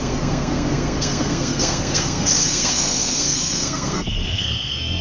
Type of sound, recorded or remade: remade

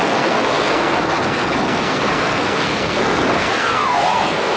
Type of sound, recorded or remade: remade